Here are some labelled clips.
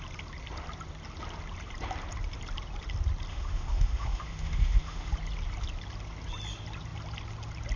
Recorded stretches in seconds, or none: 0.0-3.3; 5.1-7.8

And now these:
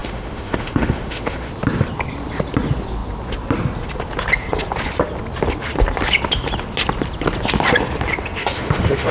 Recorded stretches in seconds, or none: 1.5-8.4

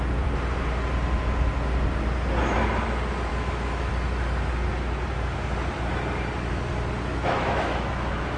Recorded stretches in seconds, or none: 0.0-3.3; 3.9-7.1

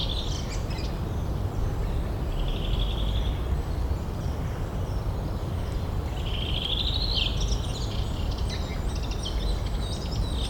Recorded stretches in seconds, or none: 0.0-10.5

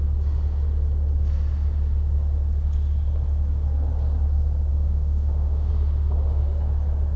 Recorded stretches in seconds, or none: 0.0-4.7; 5.7-7.2

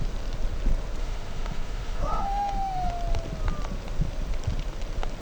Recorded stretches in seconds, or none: 0.0-1.0; 2.9-5.2

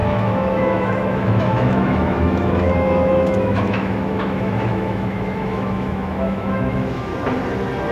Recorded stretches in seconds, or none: 7.1-7.9